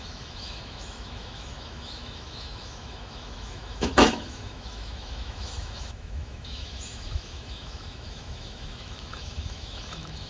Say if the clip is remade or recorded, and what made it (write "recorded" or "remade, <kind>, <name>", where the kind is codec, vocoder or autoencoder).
remade, autoencoder, DAC-VAE